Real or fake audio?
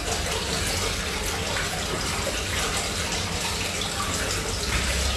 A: real